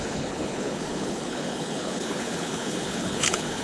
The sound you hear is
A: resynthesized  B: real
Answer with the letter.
A